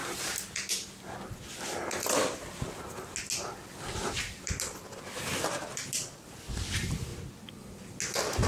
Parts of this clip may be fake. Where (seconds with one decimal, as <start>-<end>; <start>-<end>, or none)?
4.4-7.1